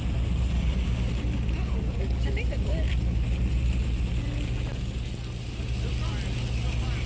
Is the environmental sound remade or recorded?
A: recorded